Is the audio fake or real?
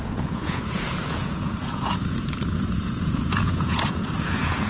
fake